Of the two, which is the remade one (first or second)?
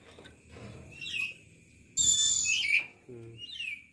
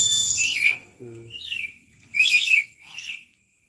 second